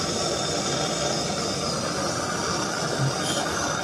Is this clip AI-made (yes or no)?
no